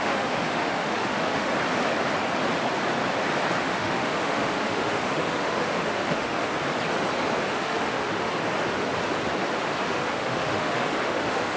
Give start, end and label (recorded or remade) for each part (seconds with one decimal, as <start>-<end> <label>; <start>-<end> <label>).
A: 0.0-1.5 remade; 1.5-3.6 recorded; 3.6-6.5 remade; 6.5-7.5 recorded; 7.5-8.3 remade; 8.3-9.8 recorded; 9.8-11.6 remade

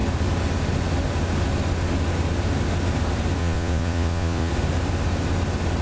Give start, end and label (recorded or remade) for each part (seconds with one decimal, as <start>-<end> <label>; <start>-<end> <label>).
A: 0.0-3.4 recorded; 3.4-4.5 remade; 4.5-5.8 recorded

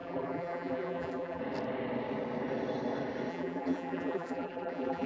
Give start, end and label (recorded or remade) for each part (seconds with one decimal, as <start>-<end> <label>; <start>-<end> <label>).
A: 0.0-1.4 remade; 1.4-3.3 recorded; 3.3-5.1 remade

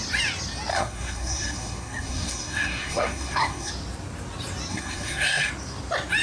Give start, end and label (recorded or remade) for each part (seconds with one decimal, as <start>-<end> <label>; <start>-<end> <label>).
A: 0.0-0.7 recorded; 0.7-3.7 remade; 3.7-4.7 recorded; 4.7-5.5 remade; 5.5-6.2 recorded

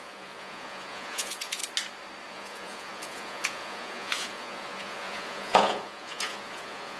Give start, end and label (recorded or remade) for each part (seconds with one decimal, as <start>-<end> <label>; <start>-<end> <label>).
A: 0.0-1.6 remade; 1.6-2.3 recorded; 2.3-7.0 remade

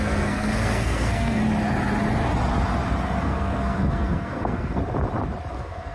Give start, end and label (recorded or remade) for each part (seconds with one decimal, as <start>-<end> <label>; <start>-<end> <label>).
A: 0.0-1.4 remade; 1.4-3.2 recorded; 3.2-4.8 remade; 4.8-5.5 recorded; 5.5-5.9 remade

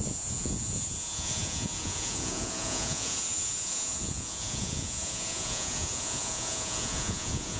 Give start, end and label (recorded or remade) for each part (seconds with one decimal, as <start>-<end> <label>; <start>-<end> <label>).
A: 0.0-7.6 remade

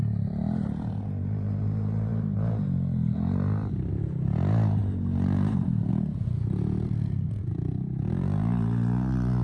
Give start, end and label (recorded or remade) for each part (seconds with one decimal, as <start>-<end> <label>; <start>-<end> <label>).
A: 0.0-9.4 recorded